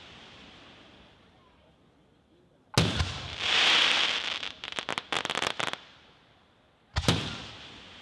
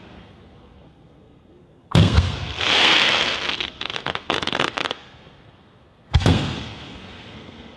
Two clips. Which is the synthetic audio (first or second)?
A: second